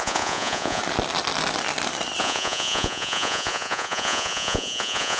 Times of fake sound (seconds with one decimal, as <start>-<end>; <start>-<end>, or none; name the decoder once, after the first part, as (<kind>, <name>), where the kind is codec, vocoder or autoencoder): 0.0-0.8 (vocoder, Vocos); 2.2-5.2